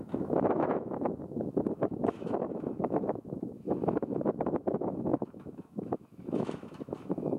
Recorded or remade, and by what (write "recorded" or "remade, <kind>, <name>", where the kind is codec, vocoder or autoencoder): remade, autoencoder, DAC-VAE